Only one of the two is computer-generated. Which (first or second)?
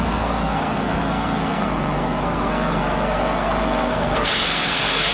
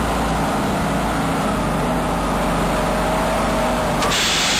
first